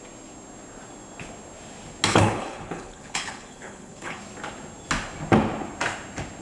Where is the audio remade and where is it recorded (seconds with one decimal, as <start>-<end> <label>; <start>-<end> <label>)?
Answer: 0.0-2.1 recorded; 2.1-4.2 remade; 4.2-6.4 recorded